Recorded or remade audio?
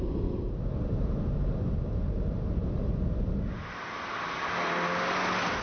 recorded